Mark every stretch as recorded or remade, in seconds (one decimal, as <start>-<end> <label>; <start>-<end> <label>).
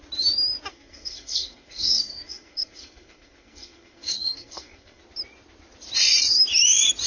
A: 0.0-0.7 recorded; 0.7-5.0 remade; 5.0-7.1 recorded